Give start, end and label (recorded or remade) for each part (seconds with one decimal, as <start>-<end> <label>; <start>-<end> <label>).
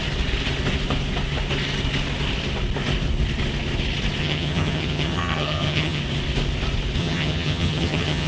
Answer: 0.0-4.2 recorded; 4.2-6.0 remade; 6.0-7.0 recorded; 7.0-8.3 remade